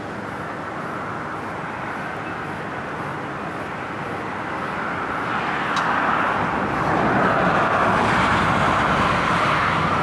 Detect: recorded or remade recorded